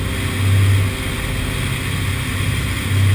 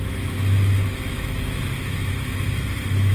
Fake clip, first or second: second